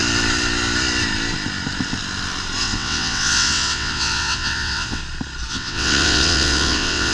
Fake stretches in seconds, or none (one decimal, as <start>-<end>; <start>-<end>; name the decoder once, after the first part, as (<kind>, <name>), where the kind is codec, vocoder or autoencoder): 2.6-5.0 (vocoder, WaveNeXt); 5.5-7.1